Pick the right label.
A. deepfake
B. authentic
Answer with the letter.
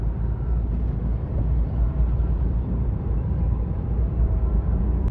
A